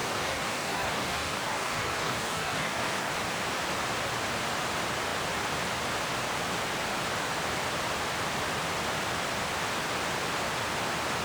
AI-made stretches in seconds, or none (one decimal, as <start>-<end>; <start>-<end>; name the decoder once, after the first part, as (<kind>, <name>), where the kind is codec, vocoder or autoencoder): 0.0-3.1 (codec, DAC)